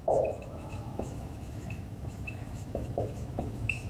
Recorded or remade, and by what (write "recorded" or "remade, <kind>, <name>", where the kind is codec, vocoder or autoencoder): remade, autoencoder, DAC-VAE